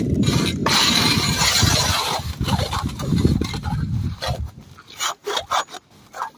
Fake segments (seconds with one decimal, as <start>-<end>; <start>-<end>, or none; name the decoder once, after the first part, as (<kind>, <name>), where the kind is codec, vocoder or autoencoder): 0.6-2.6 (vocoder, BigVGAN v2); 3.1-4.6